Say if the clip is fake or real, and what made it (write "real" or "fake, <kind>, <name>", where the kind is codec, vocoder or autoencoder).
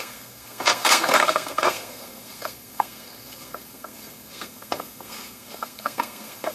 fake, codec, SNAC